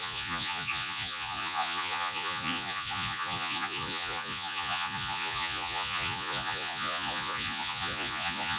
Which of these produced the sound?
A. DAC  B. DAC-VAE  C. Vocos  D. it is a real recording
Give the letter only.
C